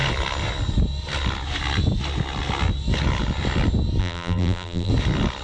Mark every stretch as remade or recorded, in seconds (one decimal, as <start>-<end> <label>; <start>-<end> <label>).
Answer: 0.0-4.0 recorded; 4.0-4.9 remade; 4.9-5.4 recorded